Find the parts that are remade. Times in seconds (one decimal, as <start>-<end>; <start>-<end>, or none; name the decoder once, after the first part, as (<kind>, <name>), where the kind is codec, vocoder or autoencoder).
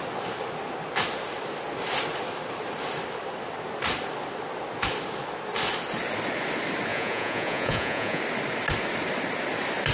6.9-8.2 (vocoder, Vocos)